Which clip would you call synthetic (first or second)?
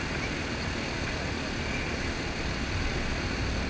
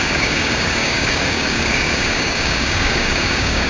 second